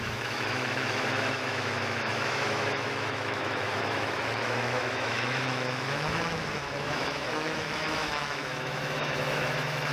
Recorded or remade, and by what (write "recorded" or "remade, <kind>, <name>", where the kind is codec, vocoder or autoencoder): remade, autoencoder, DAC-VAE